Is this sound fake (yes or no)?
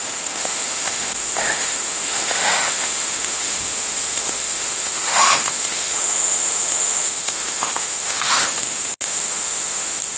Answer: yes